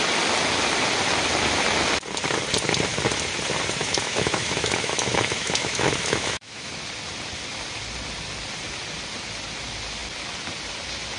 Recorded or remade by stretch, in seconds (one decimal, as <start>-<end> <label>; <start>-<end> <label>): 0.0-3.8 recorded; 3.8-6.7 remade; 6.7-11.2 recorded